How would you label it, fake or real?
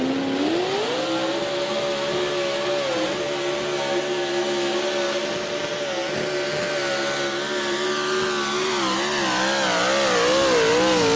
real